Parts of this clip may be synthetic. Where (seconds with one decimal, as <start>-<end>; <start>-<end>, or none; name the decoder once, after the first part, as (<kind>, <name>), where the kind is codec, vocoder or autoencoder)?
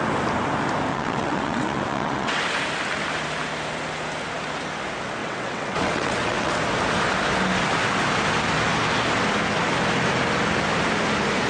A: 0.9-2.4 (vocoder, WaveNeXt); 5.2-6.5